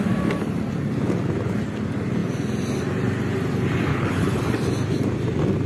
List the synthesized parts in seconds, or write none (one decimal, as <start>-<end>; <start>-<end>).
3.9-4.4